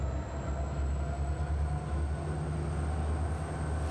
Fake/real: real